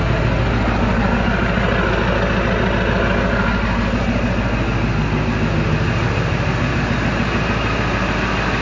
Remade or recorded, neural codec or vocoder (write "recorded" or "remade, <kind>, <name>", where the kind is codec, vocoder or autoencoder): recorded